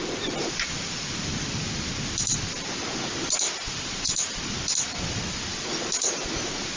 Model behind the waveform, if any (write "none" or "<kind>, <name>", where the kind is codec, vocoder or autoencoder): none